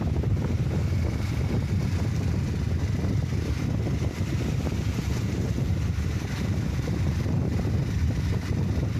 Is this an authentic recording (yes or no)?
no